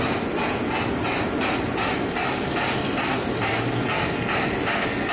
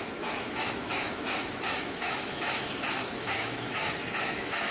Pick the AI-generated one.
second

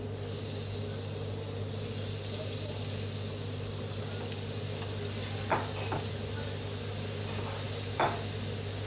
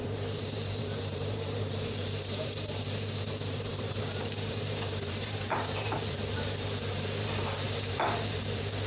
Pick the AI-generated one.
second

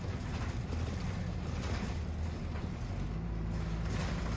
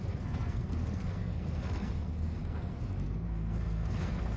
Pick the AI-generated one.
second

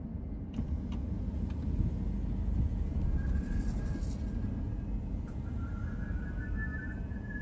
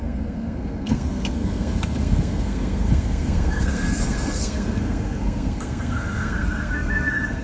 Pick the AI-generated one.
second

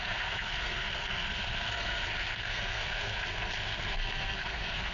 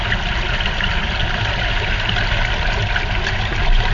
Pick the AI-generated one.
first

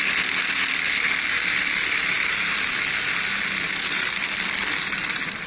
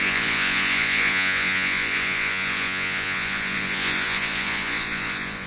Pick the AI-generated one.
second